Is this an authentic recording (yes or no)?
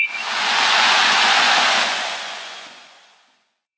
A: no